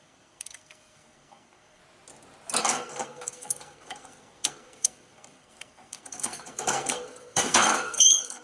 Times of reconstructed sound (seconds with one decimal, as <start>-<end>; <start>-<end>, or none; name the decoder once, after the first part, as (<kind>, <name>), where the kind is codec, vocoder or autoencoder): 0.0-1.8 (codec, SNAC); 2.6-8.4